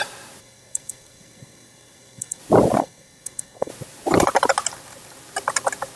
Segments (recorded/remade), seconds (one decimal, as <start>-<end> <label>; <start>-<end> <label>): 0.0-0.4 recorded; 0.4-2.4 remade; 2.4-2.8 recorded; 2.8-3.7 remade; 3.7-6.0 recorded